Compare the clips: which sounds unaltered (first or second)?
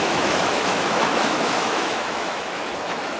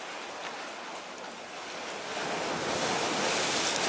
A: second